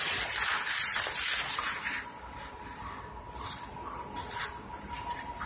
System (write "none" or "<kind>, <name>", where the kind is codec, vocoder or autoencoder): vocoder, BigVGAN v2